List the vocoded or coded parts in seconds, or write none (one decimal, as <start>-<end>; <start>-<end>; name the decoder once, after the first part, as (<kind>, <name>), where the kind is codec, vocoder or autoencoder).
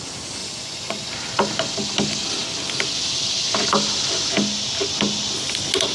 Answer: 0.4-1.1 (vocoder, Vocos)